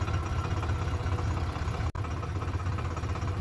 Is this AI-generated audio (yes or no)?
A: no